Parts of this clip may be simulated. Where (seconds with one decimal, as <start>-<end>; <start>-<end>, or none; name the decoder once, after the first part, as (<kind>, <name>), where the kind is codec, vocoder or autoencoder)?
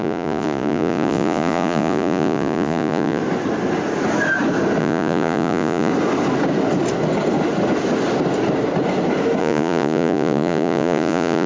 0.0-3.2 (vocoder, Vocos); 4.8-5.9; 9.4-11.5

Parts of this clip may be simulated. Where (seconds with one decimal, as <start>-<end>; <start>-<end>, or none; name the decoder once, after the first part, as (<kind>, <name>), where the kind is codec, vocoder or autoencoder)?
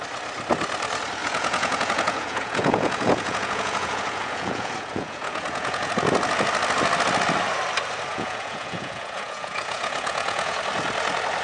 1.2-5.9 (vocoder, Vocos); 8.1-10.6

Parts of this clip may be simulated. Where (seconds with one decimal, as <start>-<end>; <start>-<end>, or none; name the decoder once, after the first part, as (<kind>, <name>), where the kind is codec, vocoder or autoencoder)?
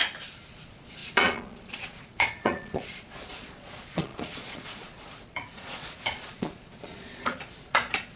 0.5-8.2 (vocoder, Vocos)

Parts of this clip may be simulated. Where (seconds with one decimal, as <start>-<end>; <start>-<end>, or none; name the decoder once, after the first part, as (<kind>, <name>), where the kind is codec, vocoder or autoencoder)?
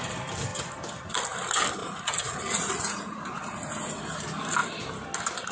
1.8-3.4 (vocoder, Vocos)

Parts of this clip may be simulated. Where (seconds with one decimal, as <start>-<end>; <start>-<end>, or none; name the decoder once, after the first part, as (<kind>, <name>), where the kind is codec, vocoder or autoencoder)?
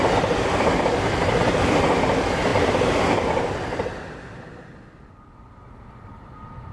none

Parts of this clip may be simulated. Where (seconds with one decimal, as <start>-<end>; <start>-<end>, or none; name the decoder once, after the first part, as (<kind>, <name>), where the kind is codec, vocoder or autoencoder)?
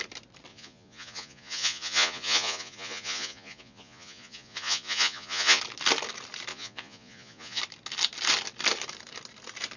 0.5-5.6 (vocoder, Vocos); 6.5-7.6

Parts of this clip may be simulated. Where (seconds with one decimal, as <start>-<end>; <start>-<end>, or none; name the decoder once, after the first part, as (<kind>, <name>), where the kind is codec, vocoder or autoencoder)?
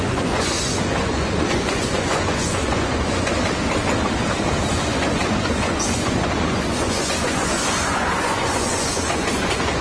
0.0-3.3 (vocoder, Vocos); 4.7-9.8